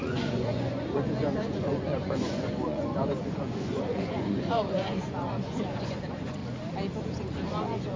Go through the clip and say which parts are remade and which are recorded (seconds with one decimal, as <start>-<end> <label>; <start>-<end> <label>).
0.0-6.4 remade; 6.4-7.5 recorded; 7.5-8.0 remade